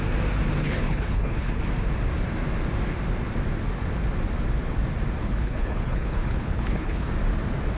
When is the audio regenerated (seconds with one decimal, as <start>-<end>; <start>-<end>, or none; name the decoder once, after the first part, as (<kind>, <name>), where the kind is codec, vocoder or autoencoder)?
0.6-1.6 (codec, HILCodec); 5.2-7.1